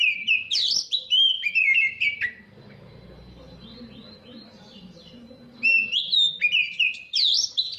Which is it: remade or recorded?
recorded